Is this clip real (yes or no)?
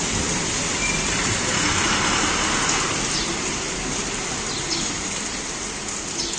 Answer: yes